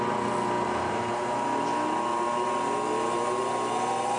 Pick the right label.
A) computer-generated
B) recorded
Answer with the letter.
B